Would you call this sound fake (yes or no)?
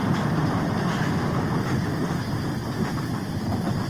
no